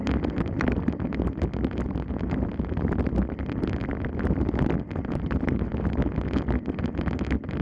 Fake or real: real